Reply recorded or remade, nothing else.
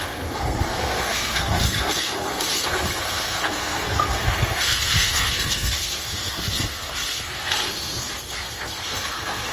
remade